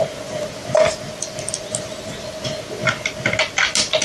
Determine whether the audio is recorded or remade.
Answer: recorded